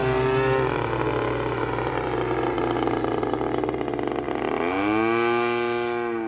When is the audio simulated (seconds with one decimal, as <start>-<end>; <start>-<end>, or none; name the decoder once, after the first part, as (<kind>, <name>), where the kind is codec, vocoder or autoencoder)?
0.0-3.8 (vocoder, BigVGAN v2)